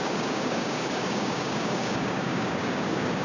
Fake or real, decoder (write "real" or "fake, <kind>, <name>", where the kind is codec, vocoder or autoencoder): fake, codec, DAC